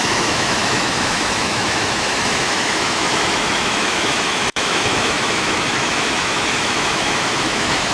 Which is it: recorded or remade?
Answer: remade